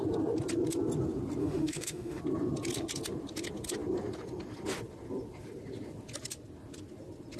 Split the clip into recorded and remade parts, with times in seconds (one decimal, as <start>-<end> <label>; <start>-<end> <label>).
0.0-1.4 recorded; 1.4-2.2 remade; 2.2-7.4 recorded